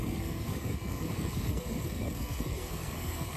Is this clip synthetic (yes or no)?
yes